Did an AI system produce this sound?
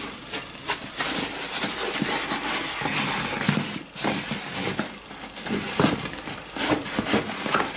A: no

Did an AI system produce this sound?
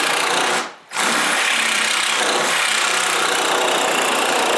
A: yes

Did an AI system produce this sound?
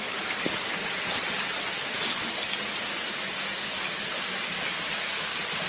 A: no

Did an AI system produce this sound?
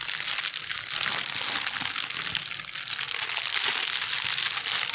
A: no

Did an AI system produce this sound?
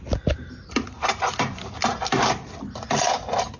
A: no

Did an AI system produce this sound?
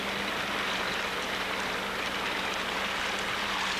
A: no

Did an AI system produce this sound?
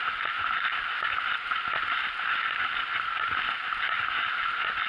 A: no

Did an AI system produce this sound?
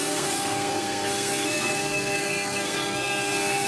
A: yes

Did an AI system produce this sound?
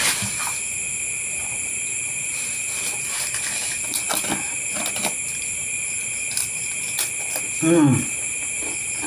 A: no